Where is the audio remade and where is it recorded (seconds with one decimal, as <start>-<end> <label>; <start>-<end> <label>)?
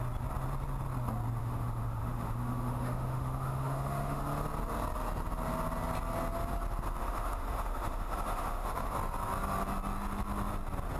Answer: 0.0-1.4 recorded; 1.4-4.2 remade; 4.2-7.0 recorded; 7.0-8.9 remade; 8.9-11.0 recorded